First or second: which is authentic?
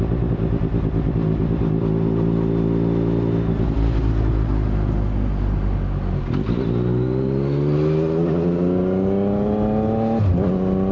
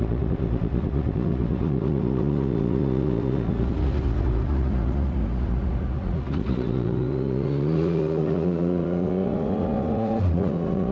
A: first